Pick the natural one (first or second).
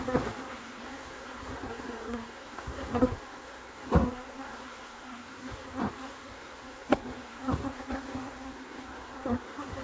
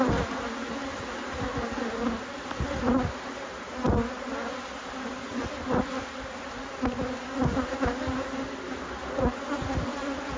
second